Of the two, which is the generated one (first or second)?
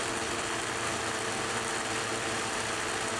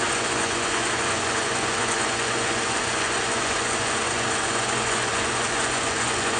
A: second